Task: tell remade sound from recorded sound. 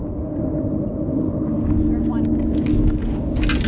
recorded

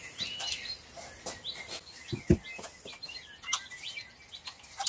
recorded